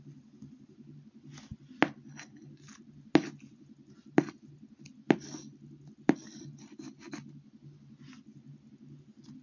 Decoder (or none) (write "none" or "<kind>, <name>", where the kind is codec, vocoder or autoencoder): none